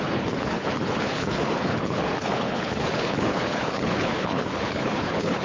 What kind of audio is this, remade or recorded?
remade